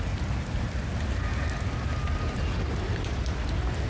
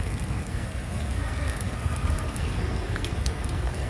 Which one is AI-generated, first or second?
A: second